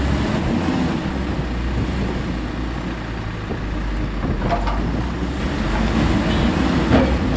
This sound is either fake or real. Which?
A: real